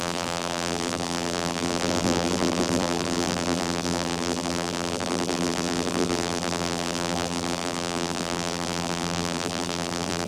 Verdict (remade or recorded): remade